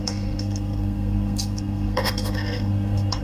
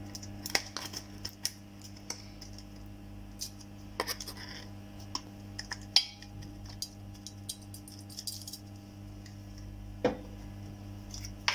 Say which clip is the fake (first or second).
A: first